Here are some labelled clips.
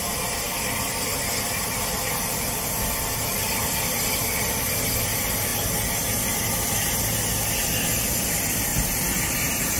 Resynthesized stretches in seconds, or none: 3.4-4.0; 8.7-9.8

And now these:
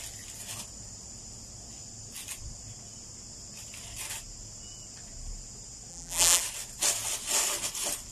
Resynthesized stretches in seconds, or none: 5.9-6.4

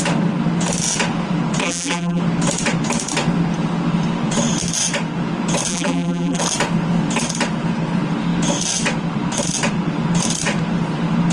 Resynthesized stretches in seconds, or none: 1.6-2.2; 5.7-6.4

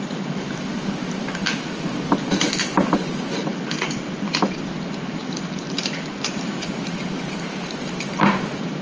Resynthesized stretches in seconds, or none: 0.0-1.4; 2.5-5.2; 5.8-8.8

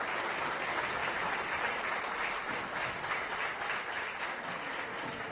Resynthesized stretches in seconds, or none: none

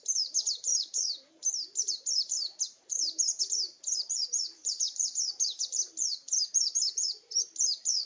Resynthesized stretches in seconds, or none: 0.0-8.1

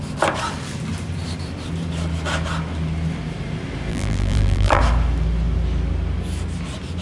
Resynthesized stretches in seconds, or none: 3.9-4.8

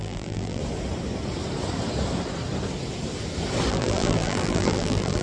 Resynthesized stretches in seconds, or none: 0.0-0.6; 3.7-5.2